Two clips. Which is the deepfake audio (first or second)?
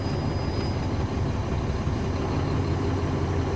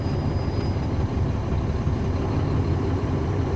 second